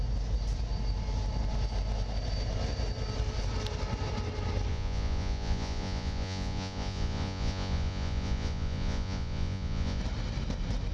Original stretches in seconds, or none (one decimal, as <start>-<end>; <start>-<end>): 0.0-4.7; 10.0-10.9